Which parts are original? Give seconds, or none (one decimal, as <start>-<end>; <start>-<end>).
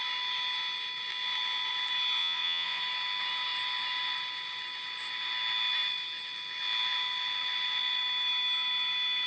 0.0-2.2; 2.8-9.3